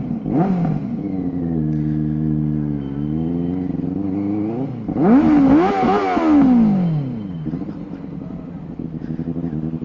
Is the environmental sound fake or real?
real